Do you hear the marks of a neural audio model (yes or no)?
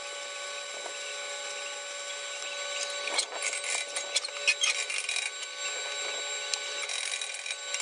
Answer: no